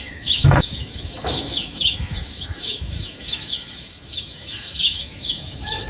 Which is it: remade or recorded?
remade